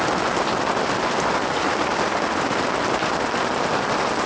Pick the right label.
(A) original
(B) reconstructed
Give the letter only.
A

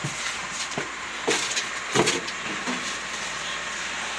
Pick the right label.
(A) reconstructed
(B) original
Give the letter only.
B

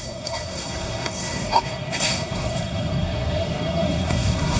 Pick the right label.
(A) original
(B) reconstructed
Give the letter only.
B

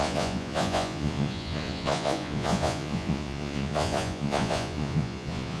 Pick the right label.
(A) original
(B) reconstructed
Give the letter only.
B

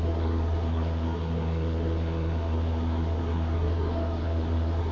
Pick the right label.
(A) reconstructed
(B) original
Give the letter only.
A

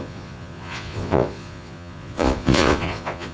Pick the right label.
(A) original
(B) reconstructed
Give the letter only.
B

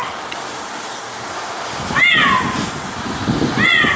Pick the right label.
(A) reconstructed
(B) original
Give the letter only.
B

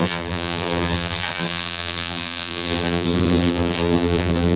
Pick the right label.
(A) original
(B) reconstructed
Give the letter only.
B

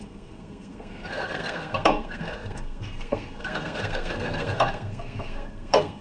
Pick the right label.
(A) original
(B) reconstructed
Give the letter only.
B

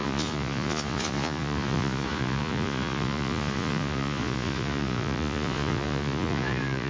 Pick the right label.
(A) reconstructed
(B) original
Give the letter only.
A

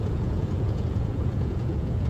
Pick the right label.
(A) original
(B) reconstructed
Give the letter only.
B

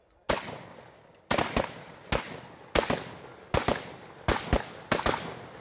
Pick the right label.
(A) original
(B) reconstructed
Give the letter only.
A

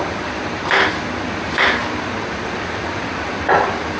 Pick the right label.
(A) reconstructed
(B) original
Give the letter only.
B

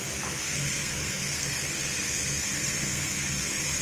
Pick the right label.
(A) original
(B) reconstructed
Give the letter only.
B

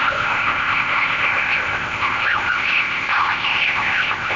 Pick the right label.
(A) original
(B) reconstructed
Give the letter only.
B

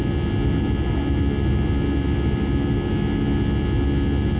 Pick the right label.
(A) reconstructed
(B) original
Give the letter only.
B